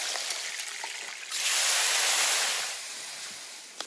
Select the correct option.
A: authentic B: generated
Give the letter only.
A